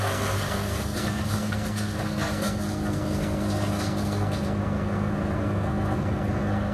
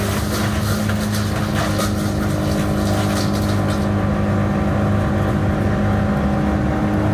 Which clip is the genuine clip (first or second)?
second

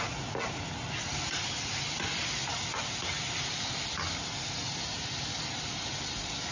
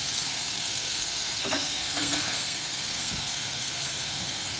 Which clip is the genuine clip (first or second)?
first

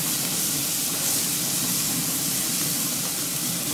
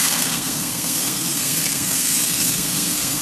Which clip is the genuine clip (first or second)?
first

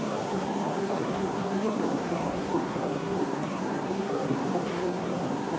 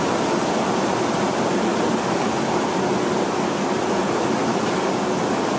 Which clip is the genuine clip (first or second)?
second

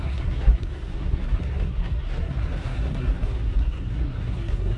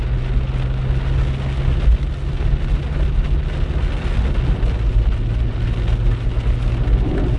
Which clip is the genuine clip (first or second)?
second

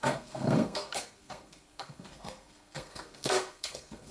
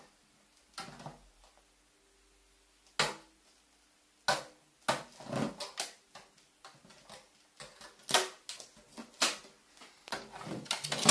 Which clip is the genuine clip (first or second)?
second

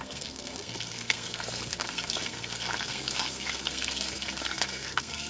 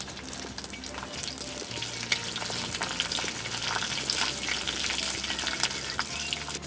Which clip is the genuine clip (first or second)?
second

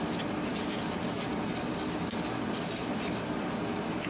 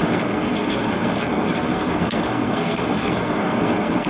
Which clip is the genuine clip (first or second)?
first